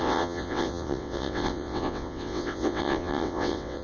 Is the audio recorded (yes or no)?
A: no